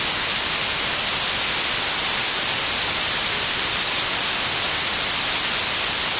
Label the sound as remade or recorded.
recorded